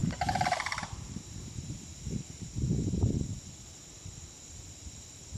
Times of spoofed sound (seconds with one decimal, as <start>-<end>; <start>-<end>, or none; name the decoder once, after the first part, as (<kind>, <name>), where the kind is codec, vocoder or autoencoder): 0.0-2.5 (vocoder, BigVGAN v2)